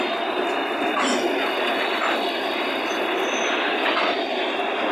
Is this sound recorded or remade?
recorded